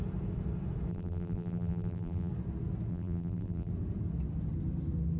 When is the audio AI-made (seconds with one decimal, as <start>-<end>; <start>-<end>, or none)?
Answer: 0.9-2.3; 2.9-3.7